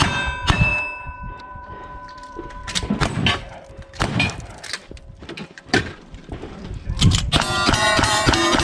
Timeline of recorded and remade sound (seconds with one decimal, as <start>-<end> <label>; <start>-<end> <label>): 0.0-0.7 remade; 0.7-1.4 recorded; 1.4-2.6 remade; 2.6-4.9 recorded; 4.9-6.7 remade; 6.7-7.8 recorded; 7.8-8.6 remade